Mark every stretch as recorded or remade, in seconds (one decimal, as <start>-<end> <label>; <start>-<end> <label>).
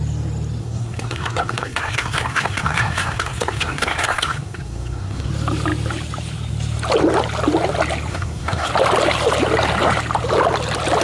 0.0-0.6 recorded; 0.6-5.3 remade; 5.3-8.1 recorded; 8.1-8.7 remade; 8.7-11.0 recorded